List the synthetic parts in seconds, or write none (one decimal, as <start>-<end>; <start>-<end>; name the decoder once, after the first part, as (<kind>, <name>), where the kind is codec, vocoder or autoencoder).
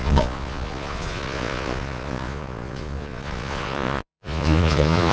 0.0-5.1 (vocoder, Vocos)